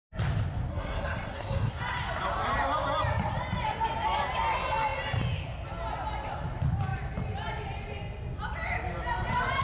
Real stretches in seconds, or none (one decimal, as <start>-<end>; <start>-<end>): 0.0-0.7; 1.8-9.6